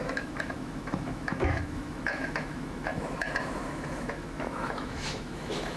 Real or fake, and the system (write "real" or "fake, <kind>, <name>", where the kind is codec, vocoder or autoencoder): fake, autoencoder, DAC-VAE